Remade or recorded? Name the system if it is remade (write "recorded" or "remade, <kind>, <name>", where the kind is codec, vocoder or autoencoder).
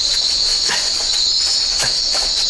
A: remade, vocoder, Vocos